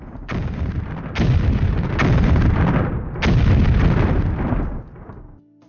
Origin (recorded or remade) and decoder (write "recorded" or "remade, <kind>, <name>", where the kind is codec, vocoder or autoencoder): remade, vocoder, BigVGAN v2